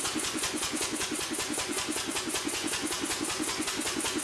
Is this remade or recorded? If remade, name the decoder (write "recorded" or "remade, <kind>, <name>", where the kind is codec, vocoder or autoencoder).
remade, vocoder, Vocos